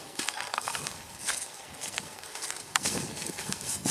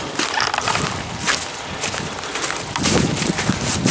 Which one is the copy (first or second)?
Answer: first